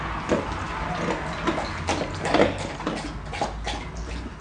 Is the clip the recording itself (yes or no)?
yes